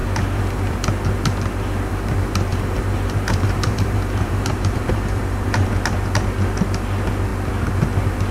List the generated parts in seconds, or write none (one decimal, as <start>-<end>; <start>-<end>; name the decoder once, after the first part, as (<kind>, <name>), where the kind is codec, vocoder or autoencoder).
2.5-5.7 (vocoder, BigVGAN v2)